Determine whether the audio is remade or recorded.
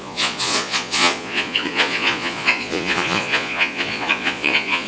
remade